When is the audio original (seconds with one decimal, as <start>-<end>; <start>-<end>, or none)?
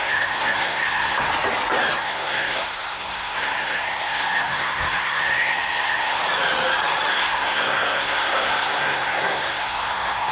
1.3-2.0; 6.2-7.1